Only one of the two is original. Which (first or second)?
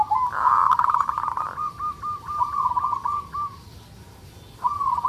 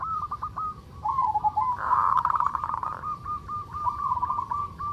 first